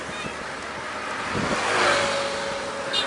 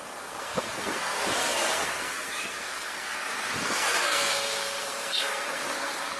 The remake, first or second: second